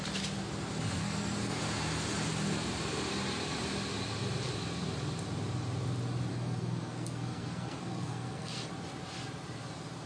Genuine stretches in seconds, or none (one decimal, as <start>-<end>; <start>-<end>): 0.0-1.0; 1.6-6.3; 8.7-10.1